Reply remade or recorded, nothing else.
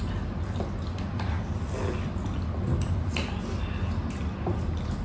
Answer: recorded